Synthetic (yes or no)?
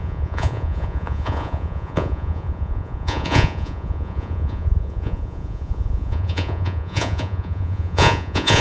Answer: yes